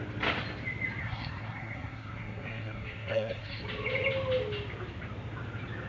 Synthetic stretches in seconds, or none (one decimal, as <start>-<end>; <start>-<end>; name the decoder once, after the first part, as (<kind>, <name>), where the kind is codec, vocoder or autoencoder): 1.0-3.6 (codec, SNAC)